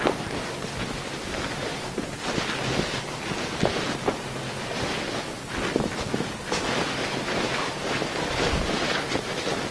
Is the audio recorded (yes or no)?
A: yes